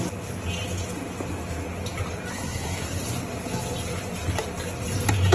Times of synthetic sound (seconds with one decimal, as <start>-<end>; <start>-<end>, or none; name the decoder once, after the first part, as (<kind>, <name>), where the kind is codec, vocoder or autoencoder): 2.3-3.0 (codec, SNAC)